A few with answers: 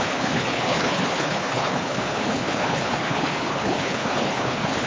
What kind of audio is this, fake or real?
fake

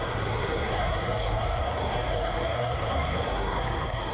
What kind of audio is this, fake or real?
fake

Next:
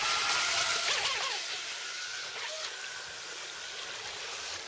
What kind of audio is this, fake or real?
real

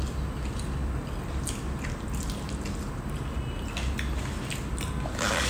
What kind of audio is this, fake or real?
real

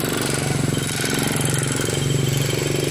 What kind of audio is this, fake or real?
real